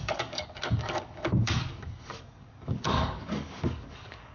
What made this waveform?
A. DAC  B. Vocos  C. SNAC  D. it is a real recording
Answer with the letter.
A